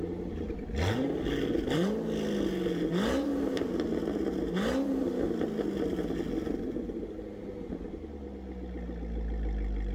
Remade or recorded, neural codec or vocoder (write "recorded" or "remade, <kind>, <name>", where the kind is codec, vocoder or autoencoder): recorded